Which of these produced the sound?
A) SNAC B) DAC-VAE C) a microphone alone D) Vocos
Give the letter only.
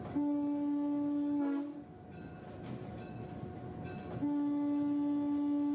C